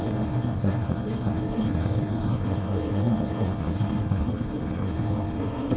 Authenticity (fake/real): fake